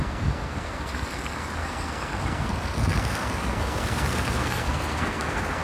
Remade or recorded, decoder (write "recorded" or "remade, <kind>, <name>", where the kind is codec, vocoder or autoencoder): remade, codec, SNAC